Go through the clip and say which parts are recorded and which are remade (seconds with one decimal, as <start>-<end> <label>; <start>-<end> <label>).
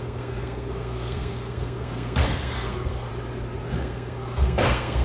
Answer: 0.0-3.1 remade; 3.1-3.7 recorded; 3.7-5.0 remade